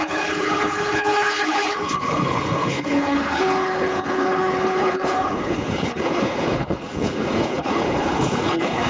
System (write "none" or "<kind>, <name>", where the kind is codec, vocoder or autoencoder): codec, HILCodec